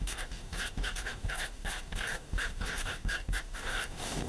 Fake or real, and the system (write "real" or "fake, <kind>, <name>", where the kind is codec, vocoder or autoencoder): fake, codec, DAC